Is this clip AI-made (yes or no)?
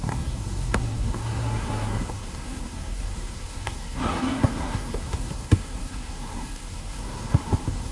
yes